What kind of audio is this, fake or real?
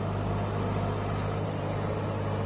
real